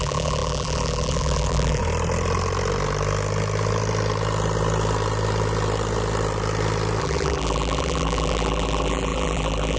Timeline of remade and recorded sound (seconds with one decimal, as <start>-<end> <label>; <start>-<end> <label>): 0.0-1.8 remade; 1.8-7.0 recorded; 7.0-9.8 remade